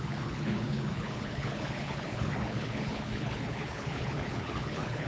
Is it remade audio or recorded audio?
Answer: remade